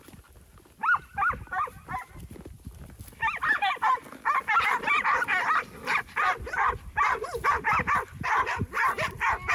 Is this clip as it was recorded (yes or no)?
yes